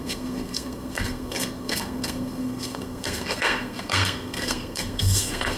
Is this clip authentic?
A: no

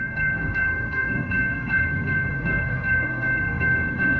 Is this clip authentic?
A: no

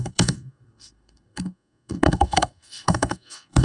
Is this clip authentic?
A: no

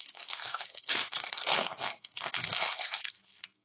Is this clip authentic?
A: no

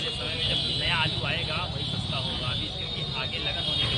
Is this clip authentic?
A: yes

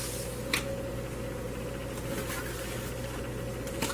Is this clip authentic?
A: yes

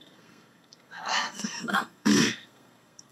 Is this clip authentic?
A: no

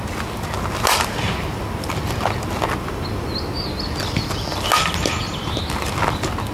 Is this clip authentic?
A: yes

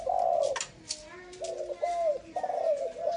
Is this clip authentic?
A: yes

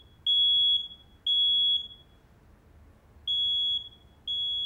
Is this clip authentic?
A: yes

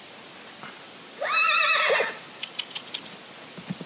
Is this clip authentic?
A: yes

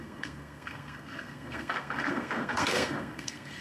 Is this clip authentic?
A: no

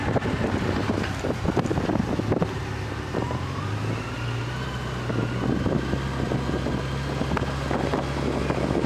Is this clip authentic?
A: yes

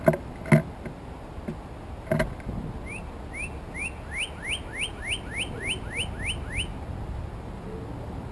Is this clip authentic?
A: yes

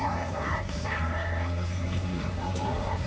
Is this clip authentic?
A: no